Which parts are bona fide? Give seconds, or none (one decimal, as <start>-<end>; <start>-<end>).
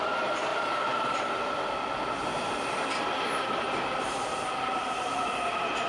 0.0-5.9